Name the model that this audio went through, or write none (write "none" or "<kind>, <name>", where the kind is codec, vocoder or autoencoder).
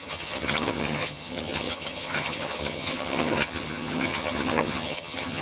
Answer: vocoder, HiFi-GAN